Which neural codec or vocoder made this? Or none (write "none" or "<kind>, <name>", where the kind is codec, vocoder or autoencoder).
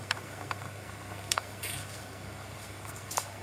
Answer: codec, SNAC